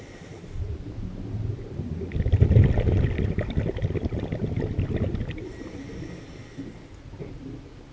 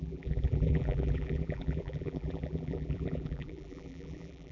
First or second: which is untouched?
first